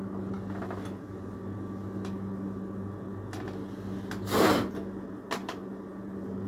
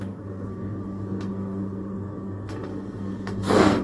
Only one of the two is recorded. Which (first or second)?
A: first